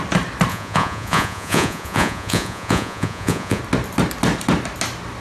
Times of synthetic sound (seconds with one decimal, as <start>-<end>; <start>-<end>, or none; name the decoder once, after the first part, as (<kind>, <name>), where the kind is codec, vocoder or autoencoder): 0.5-3.6 (vocoder, Vocos)